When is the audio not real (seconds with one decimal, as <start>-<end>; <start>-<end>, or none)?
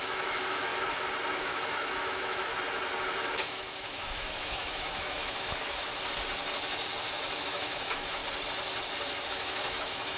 0.0-0.7; 1.4-2.5; 3.2-5.9; 7.4-8.2; 9.3-10.2